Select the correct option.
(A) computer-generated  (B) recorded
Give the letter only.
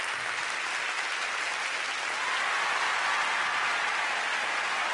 B